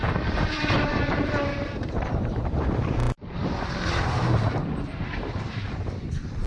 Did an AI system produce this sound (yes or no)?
yes